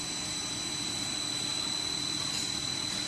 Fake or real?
real